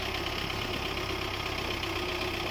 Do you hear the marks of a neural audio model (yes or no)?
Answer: no